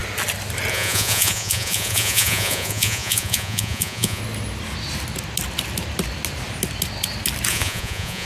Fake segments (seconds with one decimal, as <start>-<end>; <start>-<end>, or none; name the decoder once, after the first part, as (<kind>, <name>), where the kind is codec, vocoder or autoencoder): 0.7-4.2 (vocoder, Vocos); 7.5-8.3